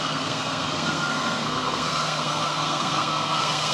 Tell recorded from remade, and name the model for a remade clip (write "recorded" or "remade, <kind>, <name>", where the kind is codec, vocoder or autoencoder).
remade, codec, SNAC